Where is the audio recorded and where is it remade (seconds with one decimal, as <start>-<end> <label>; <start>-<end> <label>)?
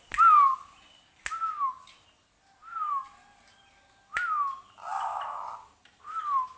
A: 0.0-6.6 recorded